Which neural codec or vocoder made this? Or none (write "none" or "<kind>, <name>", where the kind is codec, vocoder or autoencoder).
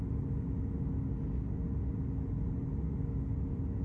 none